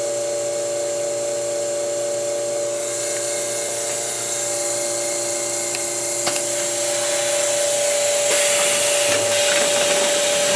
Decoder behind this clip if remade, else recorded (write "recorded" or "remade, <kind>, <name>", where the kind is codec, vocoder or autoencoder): recorded